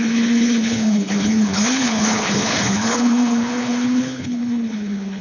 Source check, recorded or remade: remade